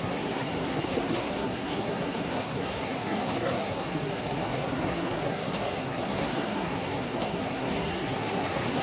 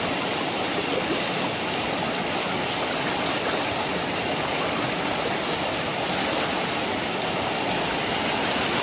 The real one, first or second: second